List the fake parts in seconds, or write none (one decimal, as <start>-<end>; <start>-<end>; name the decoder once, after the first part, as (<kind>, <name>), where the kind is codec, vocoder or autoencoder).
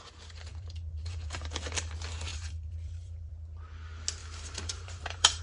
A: 0.5-1.9 (vocoder, BigVGAN v2); 2.3-3.3; 4.2-5.4